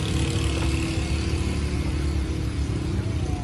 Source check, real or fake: real